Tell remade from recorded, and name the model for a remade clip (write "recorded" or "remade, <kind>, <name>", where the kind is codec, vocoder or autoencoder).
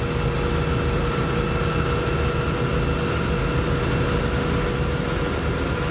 recorded